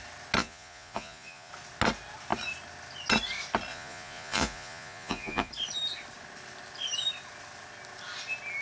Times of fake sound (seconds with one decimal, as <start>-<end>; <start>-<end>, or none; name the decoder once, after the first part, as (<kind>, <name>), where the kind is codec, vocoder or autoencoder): 0.4-1.5 (vocoder, Vocos); 3.7-5.5